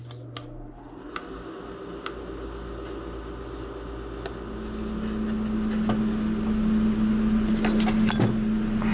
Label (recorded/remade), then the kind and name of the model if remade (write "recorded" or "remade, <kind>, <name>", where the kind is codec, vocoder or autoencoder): recorded